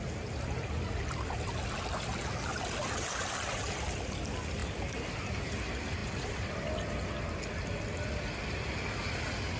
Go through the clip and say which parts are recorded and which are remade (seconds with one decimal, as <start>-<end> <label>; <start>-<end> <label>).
0.0-2.5 recorded; 2.5-3.2 remade; 3.2-6.0 recorded; 6.0-6.7 remade; 6.7-9.6 recorded

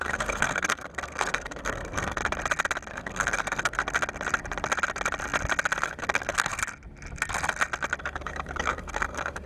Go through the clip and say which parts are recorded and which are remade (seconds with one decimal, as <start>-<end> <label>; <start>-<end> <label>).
0.0-2.2 remade; 2.2-2.9 recorded; 2.9-3.8 remade; 3.8-5.8 recorded; 5.8-6.6 remade; 6.6-8.0 recorded; 8.0-9.5 remade

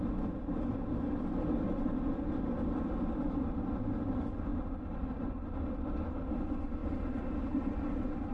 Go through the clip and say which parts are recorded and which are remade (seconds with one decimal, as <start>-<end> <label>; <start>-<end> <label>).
0.0-8.3 recorded